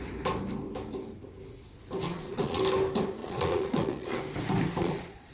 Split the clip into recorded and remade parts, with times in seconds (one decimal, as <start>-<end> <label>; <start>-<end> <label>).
0.0-2.1 recorded; 2.1-2.6 remade; 2.6-3.2 recorded; 3.2-4.2 remade; 4.2-4.8 recorded; 4.8-5.3 remade